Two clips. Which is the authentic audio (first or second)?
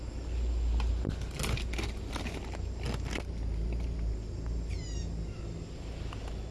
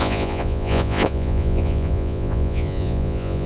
first